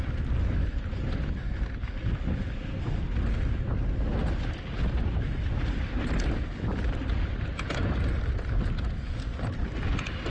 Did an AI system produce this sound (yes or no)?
no